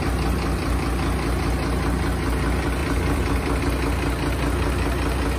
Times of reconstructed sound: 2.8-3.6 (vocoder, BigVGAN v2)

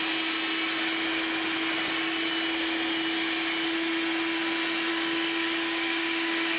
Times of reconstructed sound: 4.9-6.6 (codec, DAC)

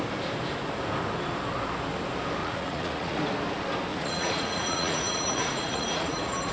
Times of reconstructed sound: 2.4-3.2 (vocoder, Vocos); 3.9-6.5

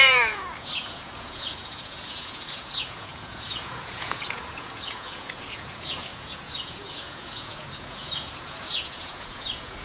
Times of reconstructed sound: 0.0-9.8 (vocoder, Vocos)

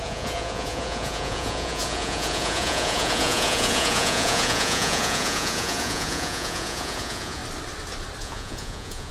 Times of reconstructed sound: 0.0-7.4 (vocoder, Vocos); 8.2-9.1